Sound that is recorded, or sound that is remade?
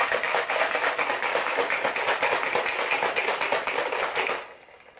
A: recorded